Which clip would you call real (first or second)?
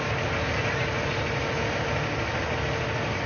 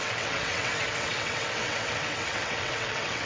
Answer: first